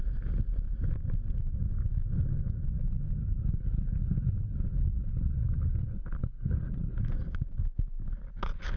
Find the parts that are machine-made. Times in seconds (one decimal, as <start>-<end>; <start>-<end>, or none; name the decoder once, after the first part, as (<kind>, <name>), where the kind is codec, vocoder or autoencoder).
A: 3.2-7.1 (codec, HILCodec)

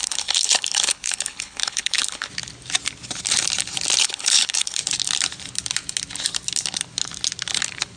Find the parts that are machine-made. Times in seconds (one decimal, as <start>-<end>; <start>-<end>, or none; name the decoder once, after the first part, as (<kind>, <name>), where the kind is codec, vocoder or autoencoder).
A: 0.0-2.3 (codec, HILCodec); 4.0-4.8

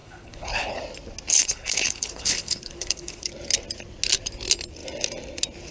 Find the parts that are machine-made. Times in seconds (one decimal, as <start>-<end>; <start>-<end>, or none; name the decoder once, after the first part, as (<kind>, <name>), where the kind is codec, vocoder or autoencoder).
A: 0.0-0.8 (codec, HILCodec); 1.3-3.3

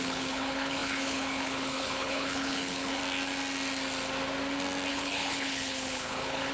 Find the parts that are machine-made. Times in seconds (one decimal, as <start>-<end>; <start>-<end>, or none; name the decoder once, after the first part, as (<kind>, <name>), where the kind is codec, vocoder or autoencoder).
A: 0.0-3.0 (codec, HILCodec); 4.9-6.5

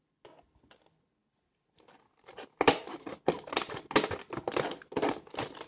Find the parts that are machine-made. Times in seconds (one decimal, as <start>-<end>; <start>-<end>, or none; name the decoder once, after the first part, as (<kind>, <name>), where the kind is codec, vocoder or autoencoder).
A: none

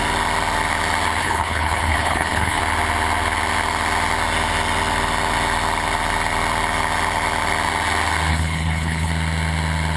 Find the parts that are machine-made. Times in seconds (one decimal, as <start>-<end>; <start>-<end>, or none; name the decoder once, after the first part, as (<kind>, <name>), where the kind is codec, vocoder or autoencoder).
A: 1.2-2.6 (codec, HILCodec); 8.3-9.1

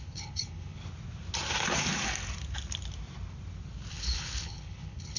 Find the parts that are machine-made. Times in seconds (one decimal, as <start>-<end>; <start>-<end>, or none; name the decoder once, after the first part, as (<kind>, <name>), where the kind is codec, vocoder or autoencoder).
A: 0.0-0.8 (codec, HILCodec); 3.9-5.2